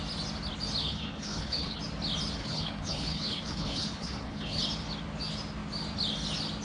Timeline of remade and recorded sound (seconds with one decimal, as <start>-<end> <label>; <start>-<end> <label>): 0.0-0.8 recorded; 0.8-1.8 remade; 1.8-2.4 recorded; 2.4-4.6 remade; 4.6-6.6 recorded